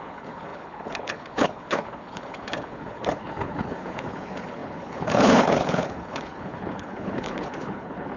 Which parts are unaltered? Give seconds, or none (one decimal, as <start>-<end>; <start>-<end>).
none